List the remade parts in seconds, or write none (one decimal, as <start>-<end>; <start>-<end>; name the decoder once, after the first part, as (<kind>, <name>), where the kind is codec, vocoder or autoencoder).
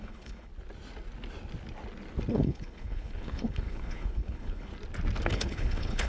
0.0-0.5 (codec, HILCodec); 2.3-4.7; 5.3-6.1